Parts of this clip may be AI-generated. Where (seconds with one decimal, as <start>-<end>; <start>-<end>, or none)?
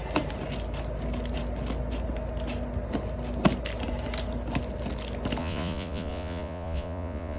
5.4-7.4